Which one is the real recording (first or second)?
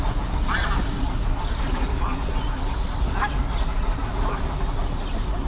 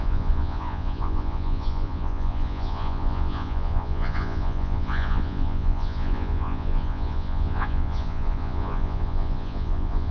first